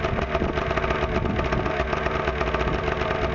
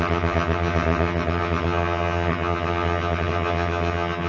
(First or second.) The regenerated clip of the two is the second